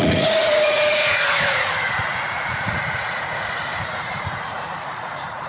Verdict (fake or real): fake